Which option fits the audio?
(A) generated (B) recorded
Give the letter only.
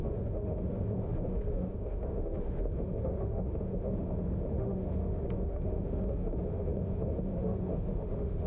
A